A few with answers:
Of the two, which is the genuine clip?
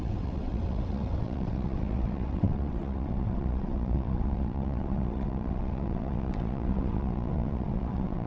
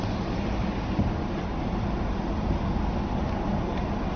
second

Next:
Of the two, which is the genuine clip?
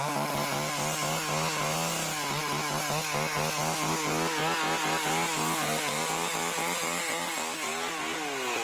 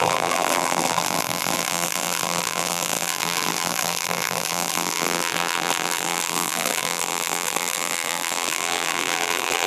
first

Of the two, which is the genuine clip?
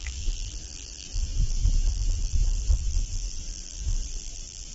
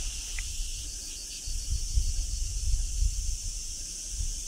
second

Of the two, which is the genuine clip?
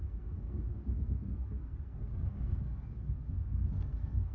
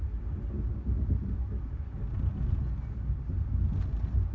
second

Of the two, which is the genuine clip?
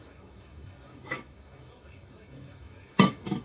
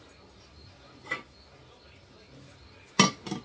second